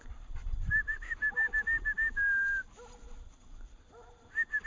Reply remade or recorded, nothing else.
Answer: recorded